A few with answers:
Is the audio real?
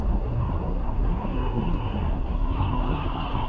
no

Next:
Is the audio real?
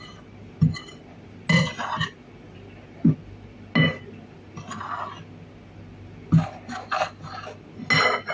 yes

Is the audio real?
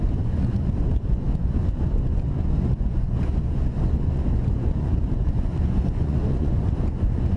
no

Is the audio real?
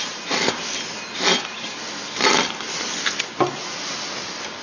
yes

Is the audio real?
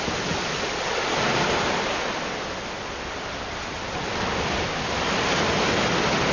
yes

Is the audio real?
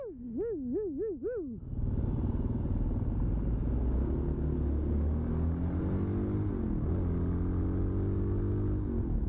yes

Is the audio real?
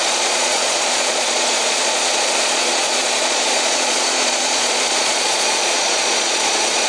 no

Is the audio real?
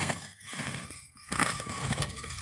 no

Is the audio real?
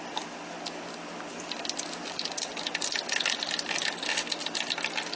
yes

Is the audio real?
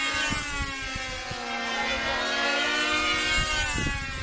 yes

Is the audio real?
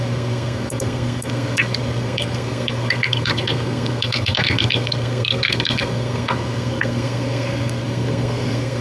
no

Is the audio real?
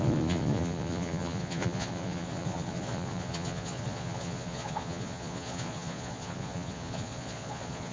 no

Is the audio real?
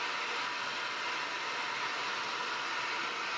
yes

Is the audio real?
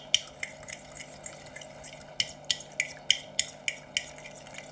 yes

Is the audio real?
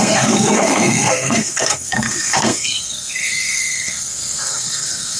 no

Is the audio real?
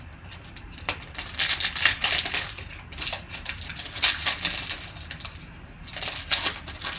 yes